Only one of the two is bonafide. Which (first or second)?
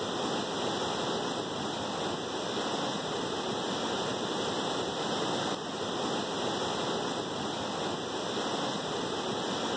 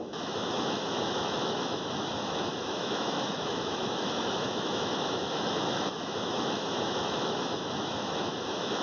first